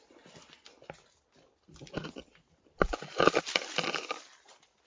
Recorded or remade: recorded